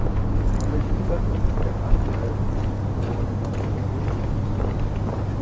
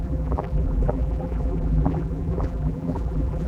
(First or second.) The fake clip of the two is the second